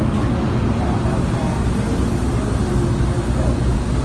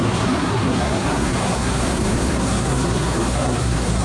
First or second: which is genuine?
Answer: first